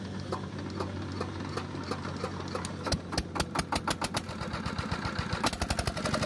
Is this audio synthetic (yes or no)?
no